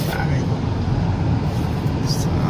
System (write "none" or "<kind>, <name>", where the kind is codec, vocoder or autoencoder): none